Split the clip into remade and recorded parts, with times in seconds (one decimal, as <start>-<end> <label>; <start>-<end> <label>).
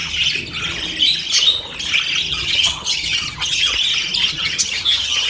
0.0-2.3 recorded; 2.3-3.7 remade; 3.7-4.3 recorded; 4.3-5.3 remade